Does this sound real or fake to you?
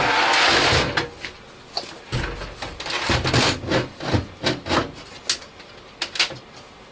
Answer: real